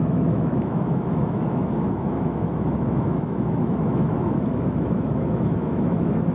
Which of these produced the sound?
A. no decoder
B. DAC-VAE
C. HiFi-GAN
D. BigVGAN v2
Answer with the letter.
B